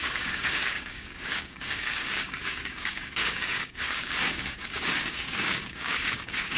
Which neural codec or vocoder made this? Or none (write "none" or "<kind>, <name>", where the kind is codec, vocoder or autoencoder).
codec, DAC